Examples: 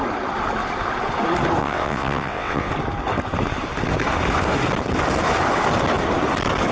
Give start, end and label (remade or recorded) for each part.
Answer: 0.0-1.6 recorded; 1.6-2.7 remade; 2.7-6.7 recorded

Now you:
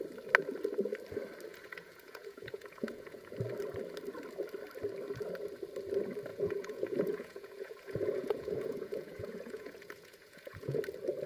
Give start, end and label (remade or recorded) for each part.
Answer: 0.0-1.5 recorded; 1.5-3.3 remade; 3.3-6.3 recorded; 6.3-10.8 remade; 10.8-11.3 recorded

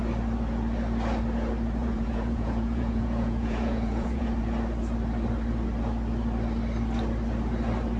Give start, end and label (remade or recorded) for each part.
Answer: 0.0-1.8 recorded; 1.8-4.4 remade; 4.4-8.0 recorded

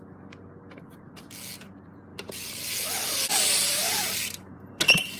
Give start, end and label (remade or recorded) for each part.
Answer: 0.0-2.1 recorded; 2.1-2.7 remade; 2.7-3.8 recorded; 3.8-5.2 remade

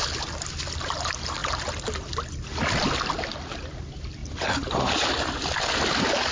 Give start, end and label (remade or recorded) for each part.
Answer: 0.0-6.3 recorded

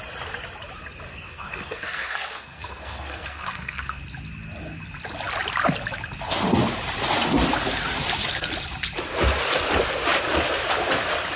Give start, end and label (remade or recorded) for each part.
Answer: 0.0-1.1 recorded; 1.1-4.0 remade; 4.0-11.4 recorded

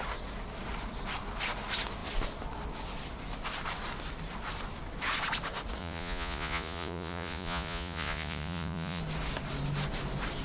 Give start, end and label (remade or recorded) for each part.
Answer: 0.0-5.8 recorded; 5.8-9.0 remade; 9.0-10.4 recorded